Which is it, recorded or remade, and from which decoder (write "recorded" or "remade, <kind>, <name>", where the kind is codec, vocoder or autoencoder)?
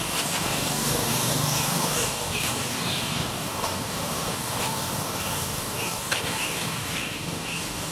remade, codec, DAC